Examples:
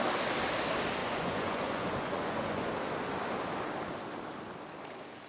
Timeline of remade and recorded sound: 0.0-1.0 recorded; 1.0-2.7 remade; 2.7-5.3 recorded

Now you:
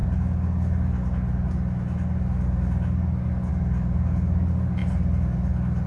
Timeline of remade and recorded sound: 0.0-5.9 recorded